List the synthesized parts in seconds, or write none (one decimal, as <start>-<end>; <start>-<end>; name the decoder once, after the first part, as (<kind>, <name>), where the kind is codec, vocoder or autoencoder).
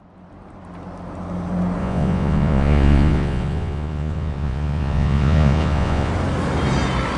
1.8-6.1 (vocoder, Vocos)